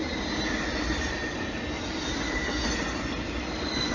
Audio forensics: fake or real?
real